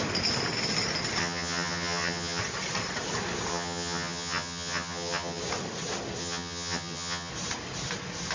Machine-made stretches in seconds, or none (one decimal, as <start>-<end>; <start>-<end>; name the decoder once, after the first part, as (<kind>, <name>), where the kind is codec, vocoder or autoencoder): 1.2-2.4 (vocoder, HiFi-GAN); 3.5-5.4; 6.2-7.3